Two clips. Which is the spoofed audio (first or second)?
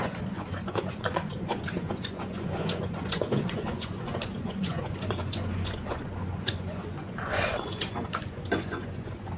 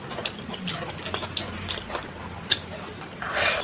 first